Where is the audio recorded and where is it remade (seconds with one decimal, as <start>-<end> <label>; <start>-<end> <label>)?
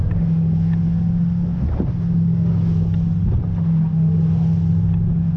0.0-5.4 recorded